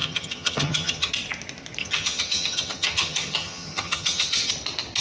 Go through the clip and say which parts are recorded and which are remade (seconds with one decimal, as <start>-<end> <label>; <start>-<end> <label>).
0.0-1.1 remade; 1.1-1.8 recorded; 1.8-4.5 remade; 4.5-5.0 recorded